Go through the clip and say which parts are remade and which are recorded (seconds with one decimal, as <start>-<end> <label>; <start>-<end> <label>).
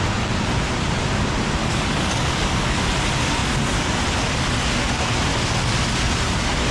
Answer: 0.0-1.6 recorded; 1.6-2.8 remade; 2.8-6.7 recorded